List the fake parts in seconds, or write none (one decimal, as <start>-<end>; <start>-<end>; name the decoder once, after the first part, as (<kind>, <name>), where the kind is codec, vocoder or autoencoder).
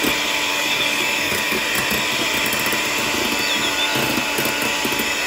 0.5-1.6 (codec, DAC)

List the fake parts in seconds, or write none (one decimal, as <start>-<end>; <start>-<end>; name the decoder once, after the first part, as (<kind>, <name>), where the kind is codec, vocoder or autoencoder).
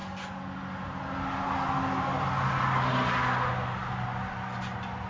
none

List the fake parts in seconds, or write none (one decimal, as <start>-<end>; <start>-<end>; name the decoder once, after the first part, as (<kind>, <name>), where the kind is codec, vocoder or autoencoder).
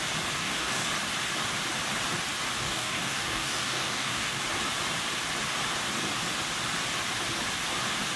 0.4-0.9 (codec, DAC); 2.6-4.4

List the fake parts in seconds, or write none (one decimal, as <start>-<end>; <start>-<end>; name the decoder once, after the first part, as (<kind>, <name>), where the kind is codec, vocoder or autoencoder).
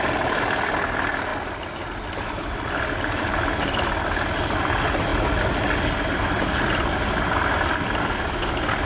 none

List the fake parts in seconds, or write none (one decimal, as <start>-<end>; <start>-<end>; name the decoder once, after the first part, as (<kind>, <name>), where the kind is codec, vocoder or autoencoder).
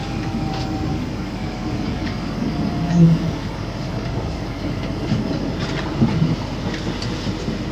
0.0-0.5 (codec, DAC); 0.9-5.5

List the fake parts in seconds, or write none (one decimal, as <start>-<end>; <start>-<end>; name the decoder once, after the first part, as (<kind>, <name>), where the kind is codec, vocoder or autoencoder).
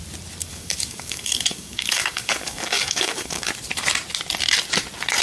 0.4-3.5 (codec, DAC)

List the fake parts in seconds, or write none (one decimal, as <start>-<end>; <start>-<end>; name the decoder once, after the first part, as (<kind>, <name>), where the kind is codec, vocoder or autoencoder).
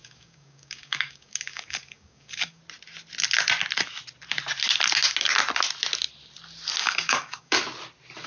0.0-2.6 (codec, DAC); 6.8-7.6